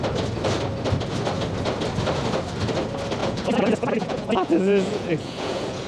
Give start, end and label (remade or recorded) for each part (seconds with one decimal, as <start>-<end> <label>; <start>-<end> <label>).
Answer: 0.0-3.2 recorded; 3.2-5.9 remade

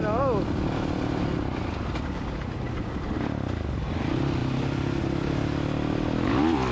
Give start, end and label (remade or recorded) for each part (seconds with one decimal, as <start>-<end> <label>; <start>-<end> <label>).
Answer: 0.0-6.7 recorded

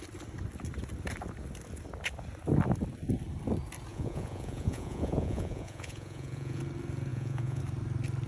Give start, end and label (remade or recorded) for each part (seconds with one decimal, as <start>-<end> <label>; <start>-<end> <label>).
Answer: 0.0-3.9 recorded; 3.9-6.6 remade; 6.6-7.1 recorded; 7.1-7.6 remade; 7.6-8.3 recorded

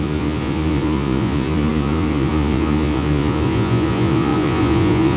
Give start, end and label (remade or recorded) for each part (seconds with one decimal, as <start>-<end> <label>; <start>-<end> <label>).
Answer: 0.0-5.2 remade

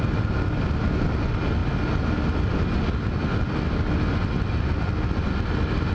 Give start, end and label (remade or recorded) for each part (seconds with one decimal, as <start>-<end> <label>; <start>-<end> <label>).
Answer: 0.0-5.9 recorded

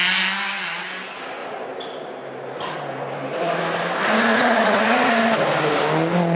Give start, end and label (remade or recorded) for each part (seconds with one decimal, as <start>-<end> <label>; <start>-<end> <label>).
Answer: 0.0-4.3 recorded; 4.3-5.1 remade; 5.1-6.4 recorded

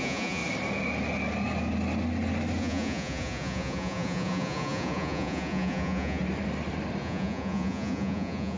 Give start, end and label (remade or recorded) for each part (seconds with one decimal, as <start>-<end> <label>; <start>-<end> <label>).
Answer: 0.0-0.4 remade; 0.4-2.6 recorded; 2.6-6.2 remade; 6.2-7.0 recorded; 7.0-8.6 remade